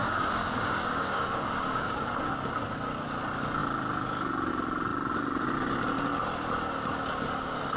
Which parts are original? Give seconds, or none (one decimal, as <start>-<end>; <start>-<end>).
2.1-7.8